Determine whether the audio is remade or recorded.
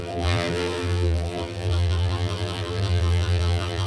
remade